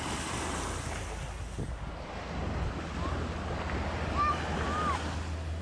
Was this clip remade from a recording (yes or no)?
no